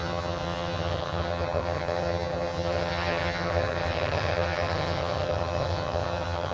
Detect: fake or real fake